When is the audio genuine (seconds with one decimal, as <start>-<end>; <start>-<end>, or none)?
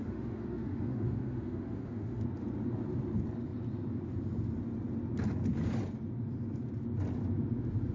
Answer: 2.2-7.9